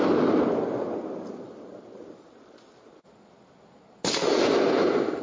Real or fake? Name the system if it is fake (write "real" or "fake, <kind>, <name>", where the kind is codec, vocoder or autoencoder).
real